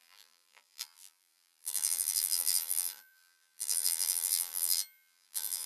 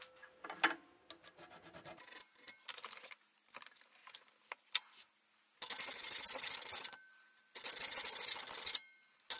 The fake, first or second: first